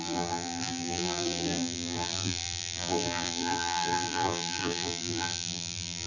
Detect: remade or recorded remade